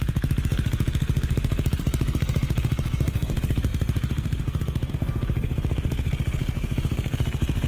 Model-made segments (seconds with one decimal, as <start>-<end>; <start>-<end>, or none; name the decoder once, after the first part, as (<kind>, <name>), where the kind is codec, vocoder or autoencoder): 0.0-7.7 (codec, SNAC)

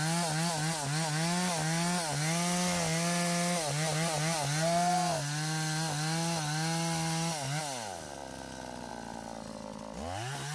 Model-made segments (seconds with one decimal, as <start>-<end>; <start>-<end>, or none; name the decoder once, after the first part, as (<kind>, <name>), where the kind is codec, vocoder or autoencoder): none